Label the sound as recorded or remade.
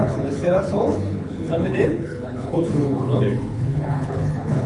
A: remade